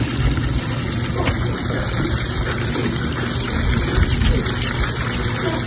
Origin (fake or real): real